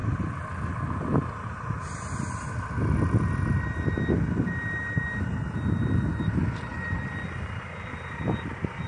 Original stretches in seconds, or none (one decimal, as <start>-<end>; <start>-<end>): 3.9-8.9